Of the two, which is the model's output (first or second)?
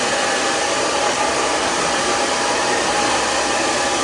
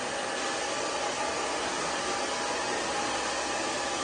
first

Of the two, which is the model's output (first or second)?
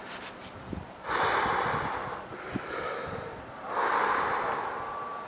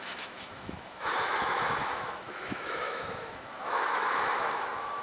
second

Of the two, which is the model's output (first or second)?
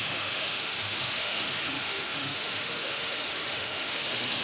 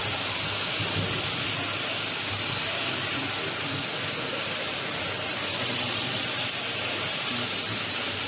first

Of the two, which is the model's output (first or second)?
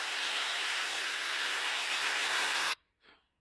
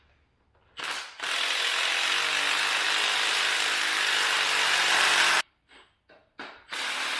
first